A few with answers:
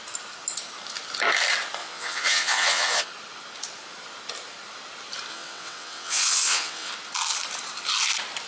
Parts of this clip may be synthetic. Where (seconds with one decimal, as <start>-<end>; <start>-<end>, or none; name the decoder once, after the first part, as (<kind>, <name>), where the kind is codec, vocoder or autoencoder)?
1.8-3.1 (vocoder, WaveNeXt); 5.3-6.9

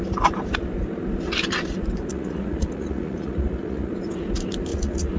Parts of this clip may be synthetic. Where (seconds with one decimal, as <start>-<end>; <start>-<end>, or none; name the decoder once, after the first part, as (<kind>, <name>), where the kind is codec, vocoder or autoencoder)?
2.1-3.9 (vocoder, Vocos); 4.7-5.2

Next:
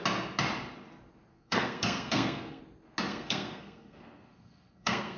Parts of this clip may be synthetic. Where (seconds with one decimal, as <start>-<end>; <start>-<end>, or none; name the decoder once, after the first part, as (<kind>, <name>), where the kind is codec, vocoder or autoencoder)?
1.3-2.6 (codec, SNAC); 3.1-5.2

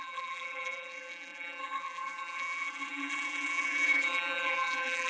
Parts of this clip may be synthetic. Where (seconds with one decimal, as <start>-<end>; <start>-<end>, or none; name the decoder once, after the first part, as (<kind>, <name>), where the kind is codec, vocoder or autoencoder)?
0.0-5.1 (vocoder, BigVGAN v2)

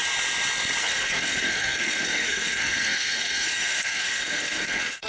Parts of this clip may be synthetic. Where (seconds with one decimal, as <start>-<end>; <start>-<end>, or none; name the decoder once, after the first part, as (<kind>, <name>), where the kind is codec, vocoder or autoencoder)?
0.8-5.1 (codec, SNAC)

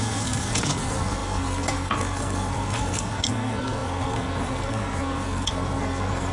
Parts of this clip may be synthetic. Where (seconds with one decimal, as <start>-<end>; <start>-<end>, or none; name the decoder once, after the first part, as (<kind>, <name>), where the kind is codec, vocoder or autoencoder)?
0.0-6.3 (codec, SNAC)